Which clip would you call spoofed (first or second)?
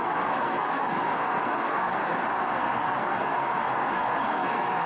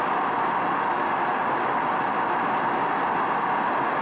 first